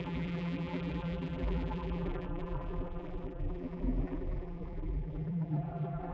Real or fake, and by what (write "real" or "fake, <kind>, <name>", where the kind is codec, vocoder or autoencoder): fake, vocoder, BigVGAN v2